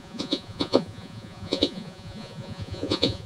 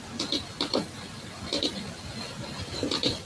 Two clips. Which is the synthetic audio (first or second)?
first